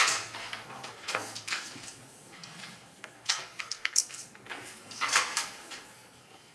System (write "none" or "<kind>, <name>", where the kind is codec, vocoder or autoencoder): codec, SNAC